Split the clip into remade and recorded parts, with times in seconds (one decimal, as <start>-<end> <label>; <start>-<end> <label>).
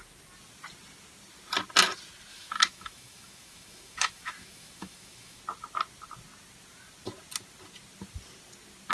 0.0-2.3 recorded; 2.3-5.4 remade; 5.4-8.9 recorded